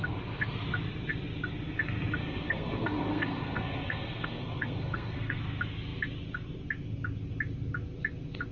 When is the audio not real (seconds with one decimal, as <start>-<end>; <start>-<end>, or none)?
2.2-5.4